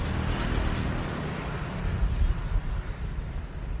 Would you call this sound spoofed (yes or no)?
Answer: no